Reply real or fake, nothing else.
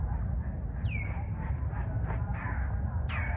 real